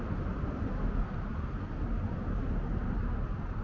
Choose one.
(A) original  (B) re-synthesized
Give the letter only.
A